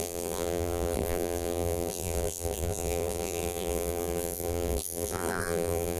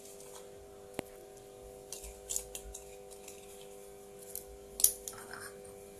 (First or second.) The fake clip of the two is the first